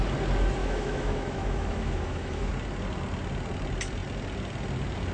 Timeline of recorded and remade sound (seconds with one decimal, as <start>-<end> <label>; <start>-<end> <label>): 0.0-0.6 recorded; 0.6-2.5 remade; 2.5-5.1 recorded